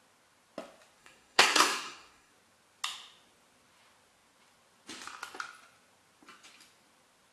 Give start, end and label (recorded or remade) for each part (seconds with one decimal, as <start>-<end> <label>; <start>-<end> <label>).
0.0-1.0 recorded; 1.0-2.3 remade; 2.3-7.3 recorded